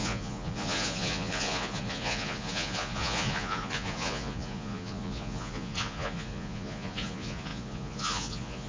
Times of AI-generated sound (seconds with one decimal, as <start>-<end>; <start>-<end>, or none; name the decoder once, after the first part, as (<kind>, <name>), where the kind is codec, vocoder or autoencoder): 0.0-8.7 (vocoder, Vocos)

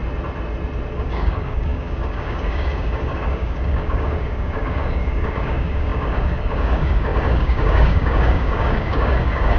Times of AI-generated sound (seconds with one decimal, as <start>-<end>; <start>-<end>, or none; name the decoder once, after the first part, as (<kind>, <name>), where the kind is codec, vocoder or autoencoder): 0.9-9.6 (codec, DAC)

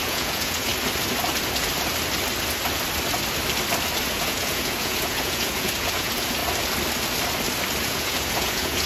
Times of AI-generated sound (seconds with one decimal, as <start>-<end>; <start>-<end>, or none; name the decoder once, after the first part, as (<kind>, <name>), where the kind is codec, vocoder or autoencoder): 0.0-0.7 (vocoder, Vocos); 4.1-6.4; 7.8-8.9

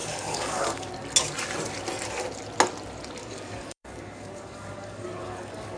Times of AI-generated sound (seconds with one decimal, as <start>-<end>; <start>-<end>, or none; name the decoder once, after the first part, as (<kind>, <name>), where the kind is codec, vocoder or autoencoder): 0.0-0.9 (codec, DAC); 3.2-5.8

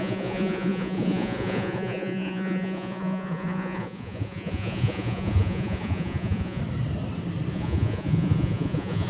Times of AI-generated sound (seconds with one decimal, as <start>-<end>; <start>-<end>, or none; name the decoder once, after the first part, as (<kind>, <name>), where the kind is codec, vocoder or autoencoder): 0.0-6.6 (vocoder, Vocos); 7.5-9.1